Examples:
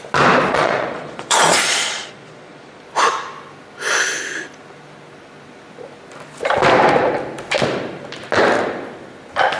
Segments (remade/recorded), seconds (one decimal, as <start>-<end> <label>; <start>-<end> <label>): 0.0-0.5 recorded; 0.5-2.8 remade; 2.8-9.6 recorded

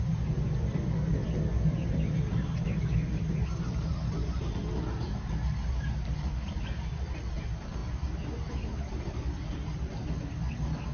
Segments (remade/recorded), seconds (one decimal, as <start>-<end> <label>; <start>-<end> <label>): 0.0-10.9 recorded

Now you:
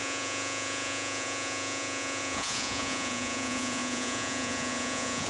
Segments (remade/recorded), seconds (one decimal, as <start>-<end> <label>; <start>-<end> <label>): 0.0-5.3 remade

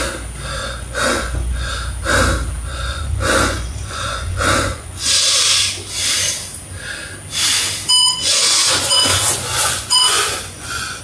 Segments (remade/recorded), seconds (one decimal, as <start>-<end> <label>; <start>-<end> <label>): 0.0-0.6 recorded; 0.6-1.7 remade; 1.7-2.7 recorded; 2.7-5.1 remade; 5.1-8.0 recorded; 8.0-11.0 remade